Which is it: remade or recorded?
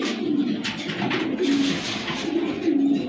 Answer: recorded